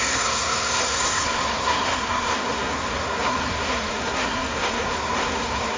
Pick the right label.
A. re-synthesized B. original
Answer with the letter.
A